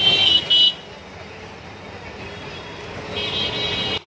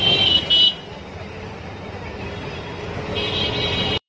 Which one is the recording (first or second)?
first